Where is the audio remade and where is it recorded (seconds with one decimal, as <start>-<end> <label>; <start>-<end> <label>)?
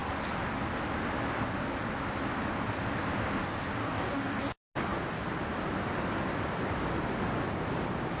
0.0-3.8 recorded; 3.8-4.4 remade; 4.4-8.2 recorded